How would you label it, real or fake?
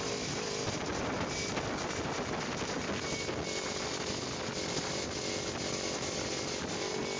real